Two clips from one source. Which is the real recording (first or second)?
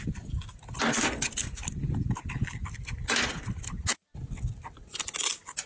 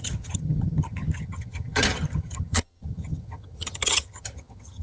first